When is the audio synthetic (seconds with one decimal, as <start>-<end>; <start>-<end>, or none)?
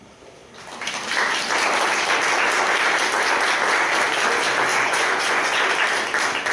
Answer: 4.7-5.6